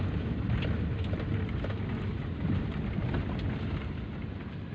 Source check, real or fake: real